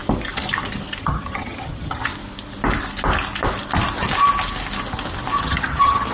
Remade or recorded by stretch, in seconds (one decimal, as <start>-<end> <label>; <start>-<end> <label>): 0.0-1.0 recorded; 1.0-2.1 remade; 2.1-5.4 recorded; 5.4-6.1 remade

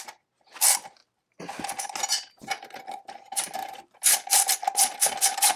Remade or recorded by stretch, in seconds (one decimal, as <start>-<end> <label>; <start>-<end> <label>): 0.0-3.6 recorded; 3.6-5.6 remade

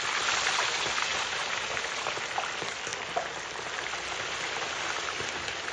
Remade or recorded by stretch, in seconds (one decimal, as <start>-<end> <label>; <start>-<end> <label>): 0.0-1.1 recorded; 1.1-2.2 remade; 2.2-5.7 recorded

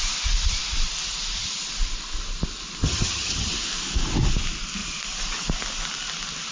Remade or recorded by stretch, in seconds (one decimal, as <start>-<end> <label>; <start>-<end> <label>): 0.0-2.8 recorded; 2.8-3.5 remade; 3.5-6.5 recorded

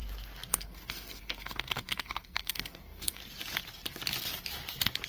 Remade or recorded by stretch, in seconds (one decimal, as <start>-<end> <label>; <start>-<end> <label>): 0.0-0.5 recorded; 0.5-3.2 remade; 3.2-5.1 recorded